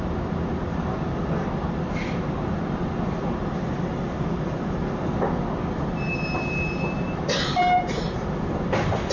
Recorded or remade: recorded